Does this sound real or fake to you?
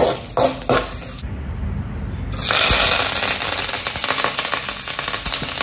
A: real